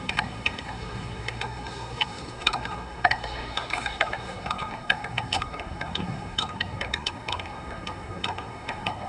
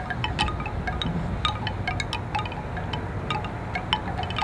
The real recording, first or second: second